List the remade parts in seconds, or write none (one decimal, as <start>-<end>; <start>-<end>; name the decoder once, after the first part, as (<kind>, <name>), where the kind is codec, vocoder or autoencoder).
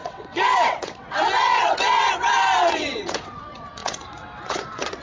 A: 0.0-5.0 (vocoder, WaveNeXt)